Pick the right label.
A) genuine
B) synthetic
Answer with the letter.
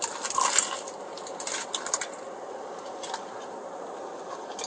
A